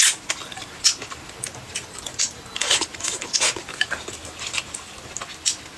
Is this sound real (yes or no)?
yes